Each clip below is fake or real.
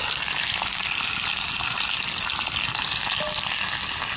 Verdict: real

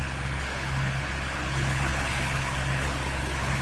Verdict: fake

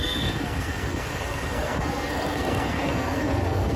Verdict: fake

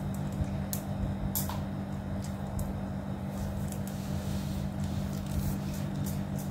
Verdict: real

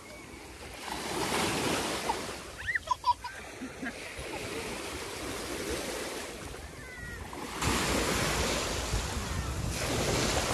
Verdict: real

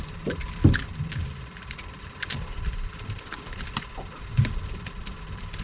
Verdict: real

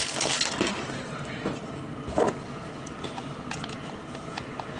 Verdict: real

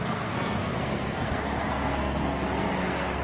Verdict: fake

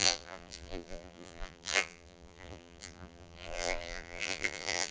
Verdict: fake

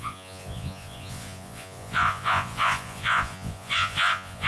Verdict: fake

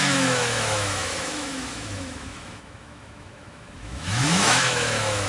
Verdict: fake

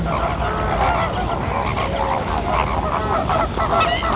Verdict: real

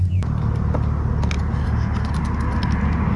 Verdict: real